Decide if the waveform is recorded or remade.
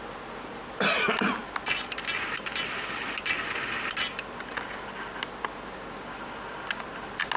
recorded